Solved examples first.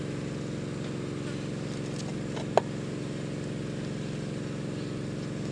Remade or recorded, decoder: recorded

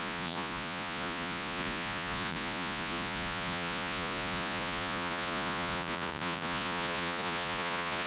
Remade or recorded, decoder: remade, vocoder, Vocos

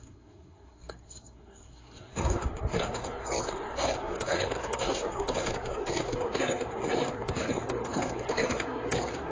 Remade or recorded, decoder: remade, codec, SNAC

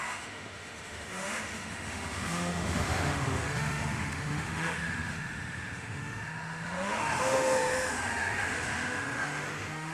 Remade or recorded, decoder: remade, autoencoder, DAC-VAE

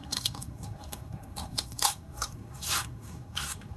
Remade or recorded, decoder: remade, codec, SNAC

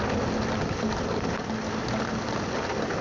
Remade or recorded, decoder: recorded